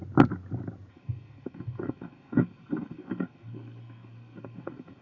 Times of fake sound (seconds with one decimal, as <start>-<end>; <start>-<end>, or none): 0.9-5.0